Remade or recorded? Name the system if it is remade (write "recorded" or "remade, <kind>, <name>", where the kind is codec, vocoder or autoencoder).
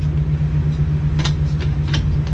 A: recorded